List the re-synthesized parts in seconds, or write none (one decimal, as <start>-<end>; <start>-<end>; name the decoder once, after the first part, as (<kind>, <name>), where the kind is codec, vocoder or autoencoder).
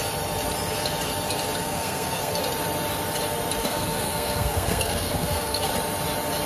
1.6-2.4 (codec, SNAC); 3.6-5.7